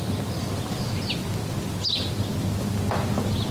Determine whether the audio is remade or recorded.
recorded